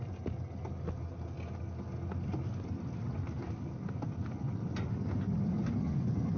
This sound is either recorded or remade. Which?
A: recorded